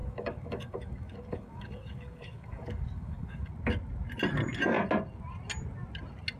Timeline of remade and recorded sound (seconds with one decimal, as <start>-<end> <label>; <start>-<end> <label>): 0.0-3.5 remade; 3.5-6.4 recorded